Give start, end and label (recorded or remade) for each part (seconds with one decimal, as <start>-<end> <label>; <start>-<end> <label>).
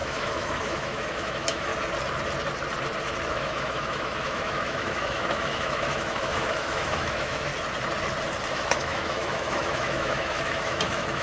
0.0-1.7 remade; 1.7-3.3 recorded; 3.3-7.5 remade; 7.5-8.5 recorded; 8.5-11.2 remade